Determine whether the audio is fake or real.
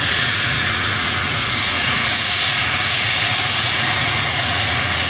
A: fake